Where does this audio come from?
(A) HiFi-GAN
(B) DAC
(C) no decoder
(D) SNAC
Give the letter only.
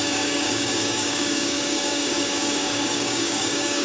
B